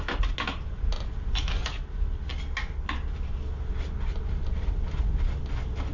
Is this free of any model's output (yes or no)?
yes